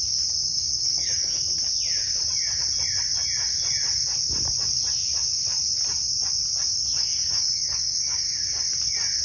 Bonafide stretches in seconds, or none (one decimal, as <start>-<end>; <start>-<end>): 0.0-0.4; 1.4-6.7; 8.6-9.2